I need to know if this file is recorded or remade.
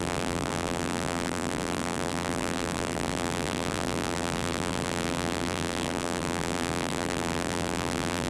remade